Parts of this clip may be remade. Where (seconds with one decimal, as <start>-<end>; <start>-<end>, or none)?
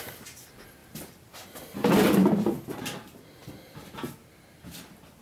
0.8-2.7